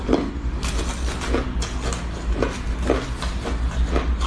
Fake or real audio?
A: real